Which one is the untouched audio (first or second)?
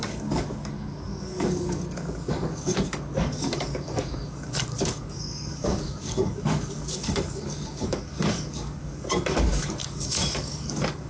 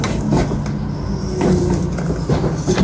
second